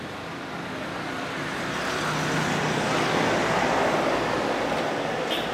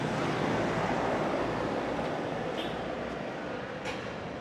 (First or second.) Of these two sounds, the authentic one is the first